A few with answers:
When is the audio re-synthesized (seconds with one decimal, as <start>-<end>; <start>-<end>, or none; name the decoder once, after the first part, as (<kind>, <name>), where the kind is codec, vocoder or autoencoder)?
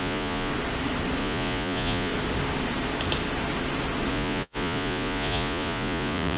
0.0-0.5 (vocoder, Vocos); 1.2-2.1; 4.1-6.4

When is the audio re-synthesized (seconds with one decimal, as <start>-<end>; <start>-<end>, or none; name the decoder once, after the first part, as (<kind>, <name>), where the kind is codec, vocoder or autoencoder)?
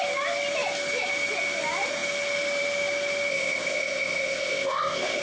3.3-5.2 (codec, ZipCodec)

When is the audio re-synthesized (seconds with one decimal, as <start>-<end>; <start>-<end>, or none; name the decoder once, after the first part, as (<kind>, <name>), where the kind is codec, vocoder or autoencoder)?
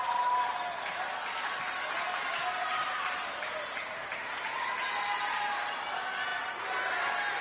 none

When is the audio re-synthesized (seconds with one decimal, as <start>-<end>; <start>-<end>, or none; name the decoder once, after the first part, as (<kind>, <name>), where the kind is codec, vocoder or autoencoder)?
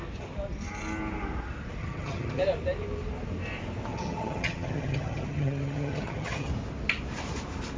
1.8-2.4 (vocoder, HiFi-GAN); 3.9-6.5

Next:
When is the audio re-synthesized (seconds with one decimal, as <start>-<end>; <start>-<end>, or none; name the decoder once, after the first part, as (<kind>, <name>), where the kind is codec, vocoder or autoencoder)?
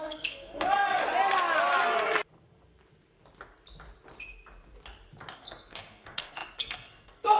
0.0-1.0 (codec, SNAC); 5.3-7.4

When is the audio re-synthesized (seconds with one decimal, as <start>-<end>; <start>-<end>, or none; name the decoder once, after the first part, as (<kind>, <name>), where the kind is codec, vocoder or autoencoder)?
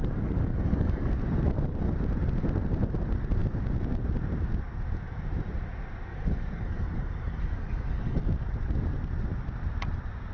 0.0-1.1 (codec, DAC); 6.1-8.2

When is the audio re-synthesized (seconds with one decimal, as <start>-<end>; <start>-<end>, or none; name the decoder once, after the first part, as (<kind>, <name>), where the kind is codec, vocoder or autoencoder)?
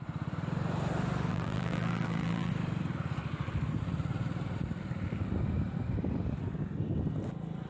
1.3-2.5 (vocoder, BigVGAN v2)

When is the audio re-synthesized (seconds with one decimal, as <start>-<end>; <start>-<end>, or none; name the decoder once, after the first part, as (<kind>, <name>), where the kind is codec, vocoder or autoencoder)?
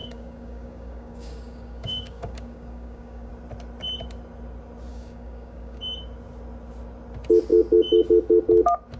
0.0-3.3 (codec, DAC); 4.9-5.8